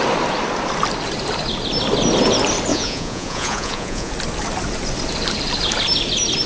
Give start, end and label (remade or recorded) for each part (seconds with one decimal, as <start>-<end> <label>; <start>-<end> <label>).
0.0-2.7 recorded; 2.7-4.1 remade; 4.1-6.5 recorded